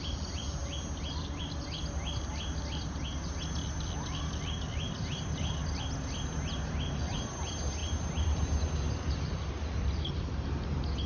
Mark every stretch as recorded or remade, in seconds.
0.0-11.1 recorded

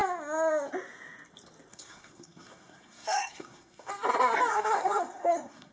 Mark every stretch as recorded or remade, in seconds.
0.0-1.7 recorded; 1.7-3.9 remade; 3.9-4.5 recorded; 4.5-5.7 remade

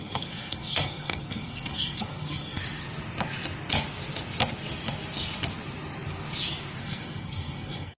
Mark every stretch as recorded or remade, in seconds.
0.0-2.6 remade; 2.6-6.8 recorded; 6.8-8.0 remade

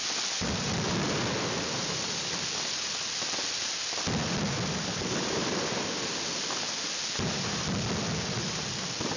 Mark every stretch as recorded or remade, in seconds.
0.0-9.2 recorded

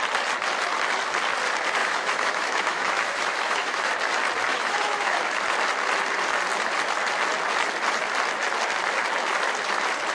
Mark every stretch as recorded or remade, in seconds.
0.0-1.8 recorded; 1.8-3.9 remade; 3.9-4.5 recorded; 4.5-5.2 remade; 5.2-10.1 recorded